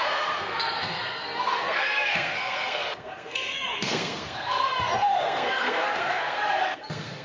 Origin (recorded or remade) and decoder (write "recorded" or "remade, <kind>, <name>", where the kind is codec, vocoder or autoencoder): remade, codec, SNAC